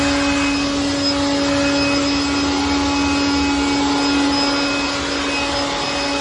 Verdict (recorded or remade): recorded